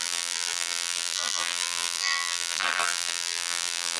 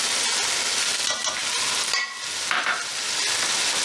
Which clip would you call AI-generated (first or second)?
first